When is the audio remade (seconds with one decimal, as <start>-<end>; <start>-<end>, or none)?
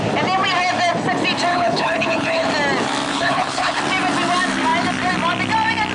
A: 1.5-2.5; 3.1-3.8